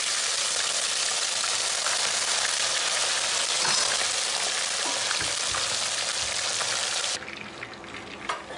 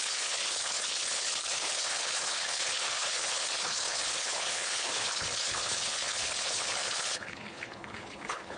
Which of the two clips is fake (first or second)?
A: second